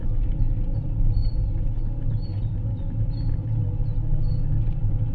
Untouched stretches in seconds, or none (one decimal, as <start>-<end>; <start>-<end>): 0.0-5.1